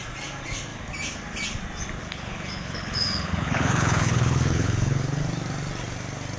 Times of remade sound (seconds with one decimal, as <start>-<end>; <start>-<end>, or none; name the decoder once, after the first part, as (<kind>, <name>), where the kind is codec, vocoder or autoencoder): 2.0-5.2 (codec, HILCodec)